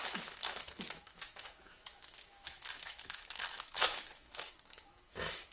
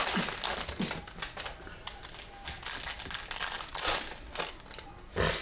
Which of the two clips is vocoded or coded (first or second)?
first